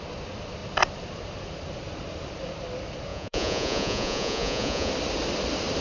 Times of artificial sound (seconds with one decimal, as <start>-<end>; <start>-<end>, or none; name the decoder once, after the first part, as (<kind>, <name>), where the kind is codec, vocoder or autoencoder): 3.1-4.9 (vocoder, Vocos)